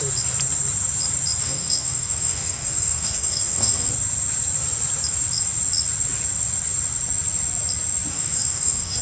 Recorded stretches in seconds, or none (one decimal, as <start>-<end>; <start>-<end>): 0.0-1.4; 3.9-8.1